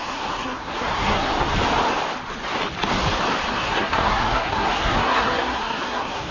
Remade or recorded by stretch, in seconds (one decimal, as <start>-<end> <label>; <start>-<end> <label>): 0.0-1.3 remade; 1.3-3.5 recorded; 3.5-6.3 remade